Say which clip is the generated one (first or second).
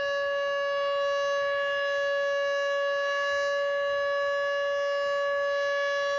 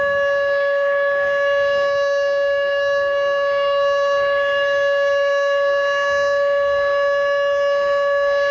second